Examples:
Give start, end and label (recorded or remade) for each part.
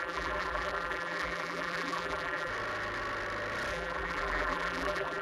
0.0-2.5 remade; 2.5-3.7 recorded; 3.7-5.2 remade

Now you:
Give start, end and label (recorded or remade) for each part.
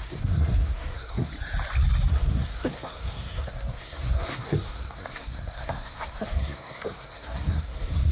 0.0-1.3 remade; 1.3-2.1 recorded; 2.1-8.1 remade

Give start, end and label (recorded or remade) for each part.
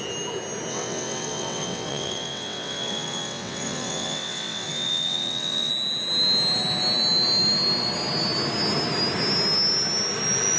0.0-0.7 recorded; 0.7-5.7 remade; 5.7-10.6 recorded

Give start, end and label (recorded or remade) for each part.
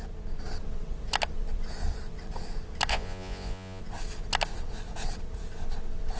0.0-2.9 recorded; 2.9-3.8 remade; 3.8-6.2 recorded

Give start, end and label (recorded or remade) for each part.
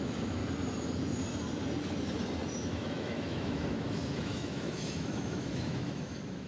0.0-0.4 remade; 0.4-2.5 recorded; 2.5-6.5 remade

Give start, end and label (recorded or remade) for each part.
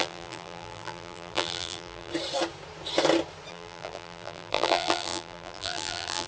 0.0-2.1 remade; 2.1-3.5 recorded; 3.5-6.3 remade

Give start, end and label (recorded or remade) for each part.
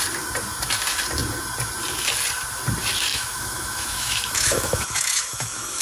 0.0-3.1 recorded; 3.1-5.8 remade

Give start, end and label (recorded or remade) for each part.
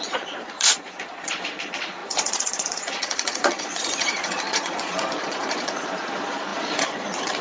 0.0-7.4 remade